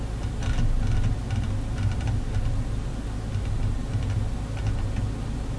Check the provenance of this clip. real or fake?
real